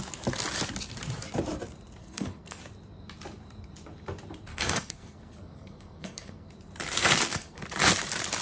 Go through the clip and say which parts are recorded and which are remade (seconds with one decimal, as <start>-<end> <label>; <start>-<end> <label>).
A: 0.0-2.0 recorded; 2.0-2.6 remade; 2.6-4.5 recorded; 4.5-6.5 remade; 6.5-7.0 recorded; 7.0-7.6 remade; 7.6-8.4 recorded